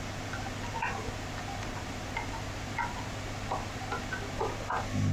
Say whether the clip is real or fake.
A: real